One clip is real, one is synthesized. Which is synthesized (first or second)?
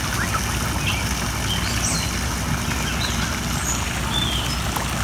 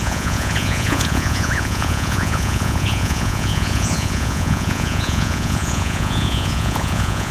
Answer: second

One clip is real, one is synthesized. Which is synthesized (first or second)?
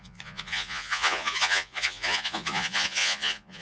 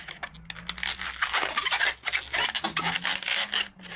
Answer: first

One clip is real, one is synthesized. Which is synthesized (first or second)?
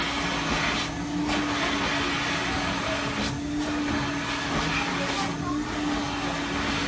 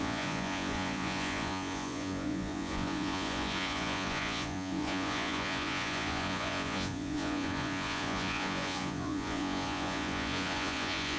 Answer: second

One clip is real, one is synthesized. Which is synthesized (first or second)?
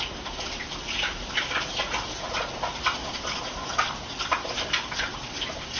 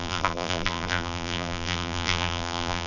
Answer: second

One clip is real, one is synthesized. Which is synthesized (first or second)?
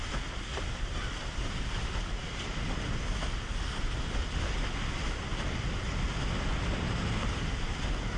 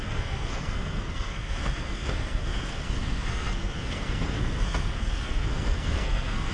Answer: second